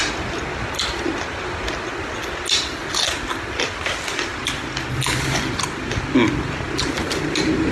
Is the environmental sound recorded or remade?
recorded